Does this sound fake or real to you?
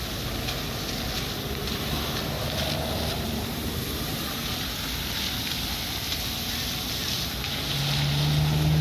real